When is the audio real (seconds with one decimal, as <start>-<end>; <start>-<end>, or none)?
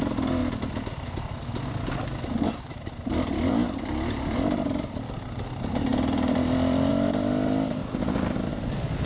0.4-3.5